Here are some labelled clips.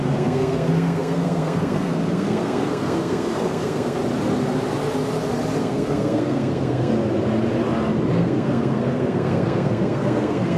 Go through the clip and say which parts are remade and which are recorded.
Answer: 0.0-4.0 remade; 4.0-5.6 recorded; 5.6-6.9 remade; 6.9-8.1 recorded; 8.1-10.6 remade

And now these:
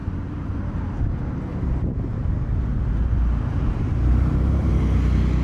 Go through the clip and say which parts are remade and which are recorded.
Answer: 0.0-0.8 remade; 0.8-1.5 recorded; 1.5-4.7 remade; 4.7-5.4 recorded

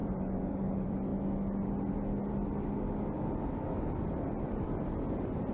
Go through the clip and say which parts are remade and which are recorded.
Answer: 0.0-1.1 remade; 1.1-4.4 recorded; 4.4-5.5 remade